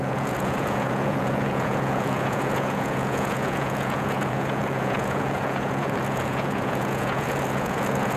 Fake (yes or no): yes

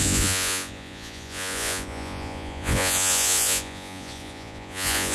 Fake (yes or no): yes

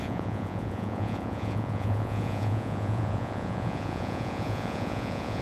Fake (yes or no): yes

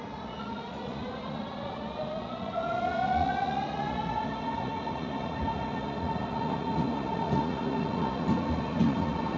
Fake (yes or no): yes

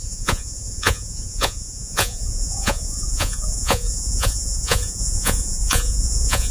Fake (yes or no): yes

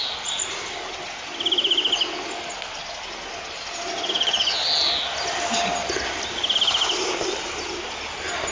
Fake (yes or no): no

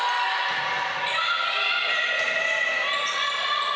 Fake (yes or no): no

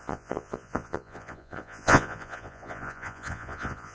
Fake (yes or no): yes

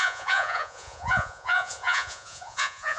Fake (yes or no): yes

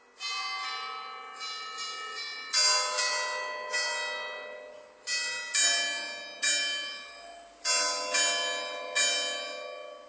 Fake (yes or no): no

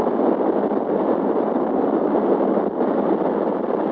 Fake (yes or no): no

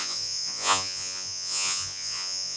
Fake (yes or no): yes